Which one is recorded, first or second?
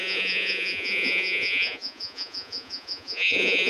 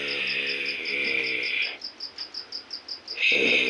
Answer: second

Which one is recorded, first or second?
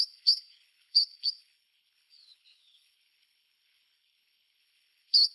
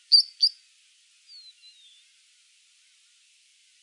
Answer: second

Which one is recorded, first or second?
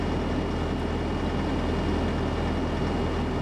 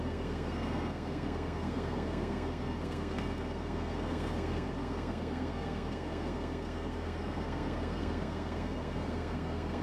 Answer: first